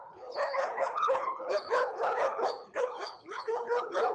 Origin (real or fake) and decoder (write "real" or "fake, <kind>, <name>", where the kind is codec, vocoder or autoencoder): fake, codec, HILCodec